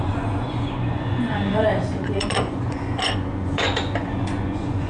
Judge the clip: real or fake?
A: fake